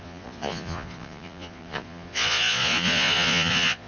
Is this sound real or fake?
fake